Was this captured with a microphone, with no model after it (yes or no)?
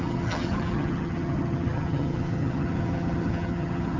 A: no